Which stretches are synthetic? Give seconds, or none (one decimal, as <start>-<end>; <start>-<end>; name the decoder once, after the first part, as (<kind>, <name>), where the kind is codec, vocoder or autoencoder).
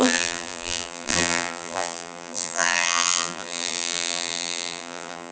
0.0-5.3 (vocoder, BigVGAN v2)